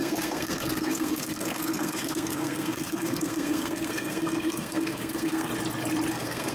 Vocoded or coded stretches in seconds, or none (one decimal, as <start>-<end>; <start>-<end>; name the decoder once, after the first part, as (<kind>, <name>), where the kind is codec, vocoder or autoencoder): 0.0-5.5 (codec, SNAC); 6.1-6.5

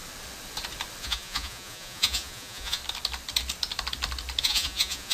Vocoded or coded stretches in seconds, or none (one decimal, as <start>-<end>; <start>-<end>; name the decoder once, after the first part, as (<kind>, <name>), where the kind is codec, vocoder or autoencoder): 1.0-2.8 (vocoder, Vocos); 4.4-5.1

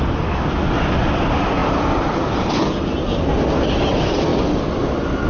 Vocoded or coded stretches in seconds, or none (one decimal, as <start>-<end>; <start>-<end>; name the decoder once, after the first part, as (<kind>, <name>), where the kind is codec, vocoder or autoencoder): none

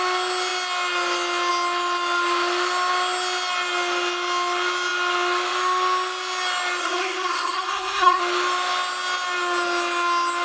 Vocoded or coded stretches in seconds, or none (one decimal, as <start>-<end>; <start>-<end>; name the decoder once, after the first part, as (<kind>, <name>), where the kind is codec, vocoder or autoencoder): 6.8-8.2 (codec, SNAC)

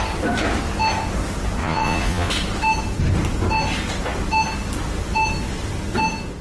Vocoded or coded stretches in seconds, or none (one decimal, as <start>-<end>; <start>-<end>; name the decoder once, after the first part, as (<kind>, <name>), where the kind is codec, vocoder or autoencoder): 1.6-2.3 (vocoder, Vocos)